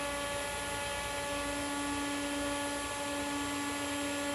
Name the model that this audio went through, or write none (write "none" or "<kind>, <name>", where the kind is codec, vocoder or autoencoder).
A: none